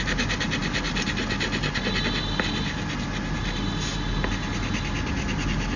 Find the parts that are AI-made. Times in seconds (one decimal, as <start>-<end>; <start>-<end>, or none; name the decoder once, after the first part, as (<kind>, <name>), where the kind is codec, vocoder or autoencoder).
none